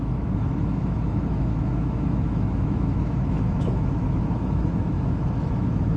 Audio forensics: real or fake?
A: fake